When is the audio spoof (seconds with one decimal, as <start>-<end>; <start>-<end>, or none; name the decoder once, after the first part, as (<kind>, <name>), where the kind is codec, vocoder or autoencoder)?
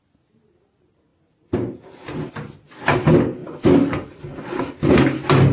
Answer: none